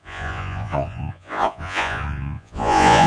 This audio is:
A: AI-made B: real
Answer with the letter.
A